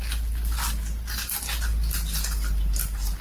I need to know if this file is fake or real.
real